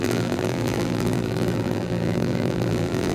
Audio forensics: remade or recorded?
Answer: remade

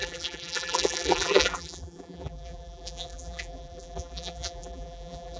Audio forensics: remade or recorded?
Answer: remade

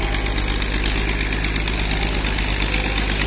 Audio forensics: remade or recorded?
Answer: recorded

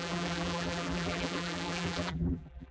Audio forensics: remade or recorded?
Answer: remade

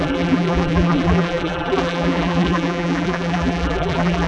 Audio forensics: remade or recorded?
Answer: remade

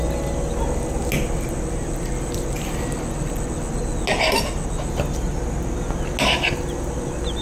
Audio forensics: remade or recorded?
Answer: recorded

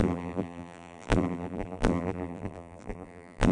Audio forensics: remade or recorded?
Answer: remade